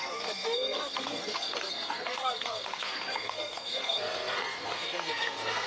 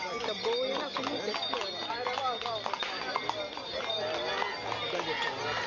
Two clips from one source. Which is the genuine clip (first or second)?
second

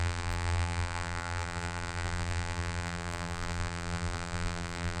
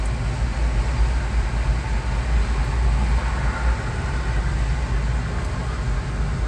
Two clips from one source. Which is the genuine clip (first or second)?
second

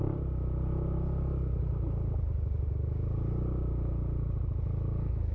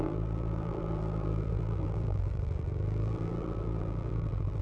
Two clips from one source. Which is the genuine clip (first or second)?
first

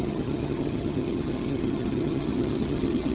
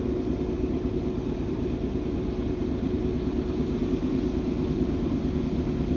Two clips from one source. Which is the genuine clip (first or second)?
second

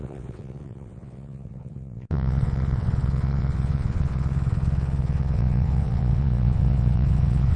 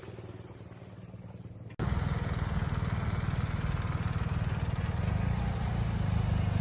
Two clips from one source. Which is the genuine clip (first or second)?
second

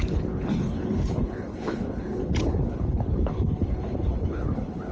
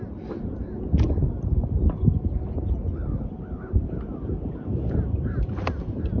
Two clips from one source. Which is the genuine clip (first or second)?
second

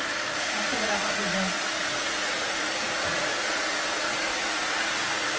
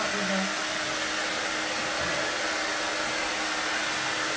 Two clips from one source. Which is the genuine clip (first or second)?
second